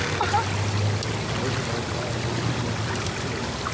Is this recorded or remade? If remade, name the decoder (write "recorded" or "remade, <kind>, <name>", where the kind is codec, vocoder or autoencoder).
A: recorded